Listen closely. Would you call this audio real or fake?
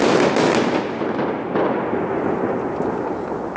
real